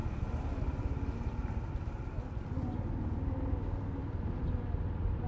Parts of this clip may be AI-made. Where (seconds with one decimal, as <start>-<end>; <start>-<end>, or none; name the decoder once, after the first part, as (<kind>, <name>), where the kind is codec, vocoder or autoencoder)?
none